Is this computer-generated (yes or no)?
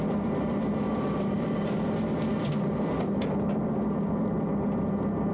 no